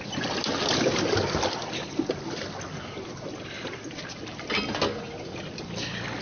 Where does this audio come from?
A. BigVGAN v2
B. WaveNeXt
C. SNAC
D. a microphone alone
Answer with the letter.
D